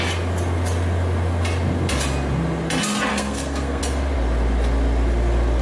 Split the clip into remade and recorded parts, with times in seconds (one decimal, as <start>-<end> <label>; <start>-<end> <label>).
0.0-3.1 recorded; 3.1-3.8 remade; 3.8-5.6 recorded

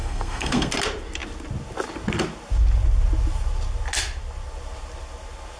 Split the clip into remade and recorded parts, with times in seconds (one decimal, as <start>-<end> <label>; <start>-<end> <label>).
0.0-0.7 remade; 0.7-5.6 recorded